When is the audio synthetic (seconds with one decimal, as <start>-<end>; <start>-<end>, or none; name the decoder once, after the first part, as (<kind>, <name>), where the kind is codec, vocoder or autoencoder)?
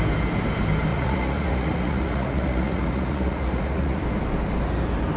0.9-4.0 (vocoder, Vocos)